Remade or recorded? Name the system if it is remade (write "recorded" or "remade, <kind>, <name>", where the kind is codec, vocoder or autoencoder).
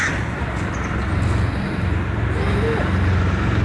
recorded